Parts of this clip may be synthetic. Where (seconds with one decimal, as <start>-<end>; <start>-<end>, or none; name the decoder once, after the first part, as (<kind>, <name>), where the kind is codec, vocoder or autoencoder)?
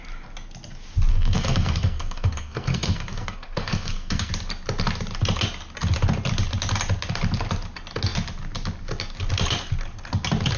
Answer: 1.1-4.3 (codec, SNAC)